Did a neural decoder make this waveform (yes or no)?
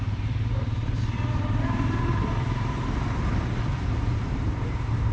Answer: yes